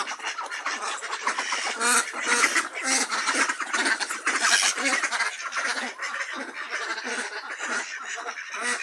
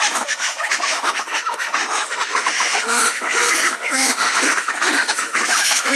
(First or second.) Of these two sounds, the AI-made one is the second